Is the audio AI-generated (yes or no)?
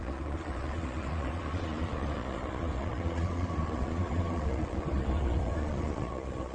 yes